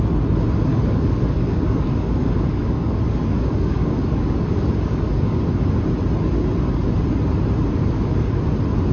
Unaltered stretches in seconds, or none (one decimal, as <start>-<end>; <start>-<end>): 0.0-0.7; 5.4-7.8; 8.4-8.9